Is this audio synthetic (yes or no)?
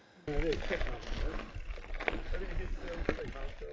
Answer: no